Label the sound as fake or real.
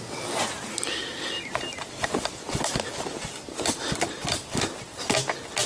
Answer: real